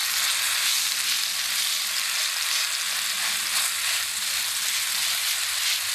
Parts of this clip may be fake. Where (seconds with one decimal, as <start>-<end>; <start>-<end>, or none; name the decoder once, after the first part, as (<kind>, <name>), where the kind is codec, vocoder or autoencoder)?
none